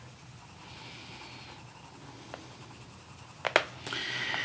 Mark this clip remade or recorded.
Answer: recorded